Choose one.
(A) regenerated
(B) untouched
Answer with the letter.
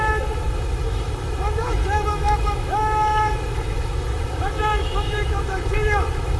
A